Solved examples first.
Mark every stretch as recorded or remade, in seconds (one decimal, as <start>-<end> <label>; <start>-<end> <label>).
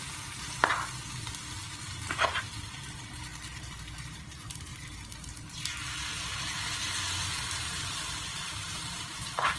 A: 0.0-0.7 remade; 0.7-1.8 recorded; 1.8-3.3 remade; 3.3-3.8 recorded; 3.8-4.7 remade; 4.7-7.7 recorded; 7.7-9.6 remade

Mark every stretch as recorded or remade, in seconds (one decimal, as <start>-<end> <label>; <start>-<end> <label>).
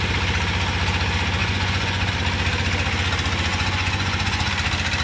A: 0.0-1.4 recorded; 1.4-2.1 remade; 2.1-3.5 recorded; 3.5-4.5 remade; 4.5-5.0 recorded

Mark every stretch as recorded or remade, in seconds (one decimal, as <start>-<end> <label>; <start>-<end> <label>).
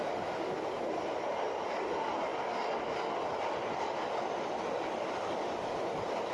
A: 0.0-6.3 recorded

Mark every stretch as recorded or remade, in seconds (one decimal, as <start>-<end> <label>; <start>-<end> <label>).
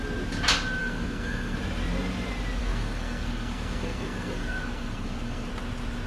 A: 0.0-0.8 recorded; 0.8-1.6 remade; 1.6-2.6 recorded; 2.6-5.5 remade; 5.5-6.1 recorded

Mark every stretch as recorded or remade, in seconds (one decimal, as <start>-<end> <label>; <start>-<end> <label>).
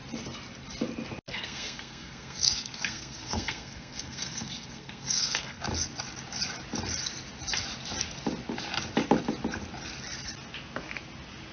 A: 0.0-1.3 recorded; 1.3-5.6 remade; 5.6-11.5 recorded